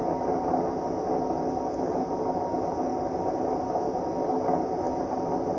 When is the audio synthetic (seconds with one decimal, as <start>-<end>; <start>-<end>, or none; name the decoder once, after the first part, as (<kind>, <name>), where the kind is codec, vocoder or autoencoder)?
none